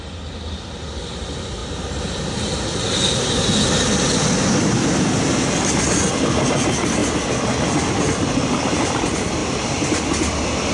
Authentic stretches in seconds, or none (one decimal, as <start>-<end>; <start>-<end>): 0.0-10.7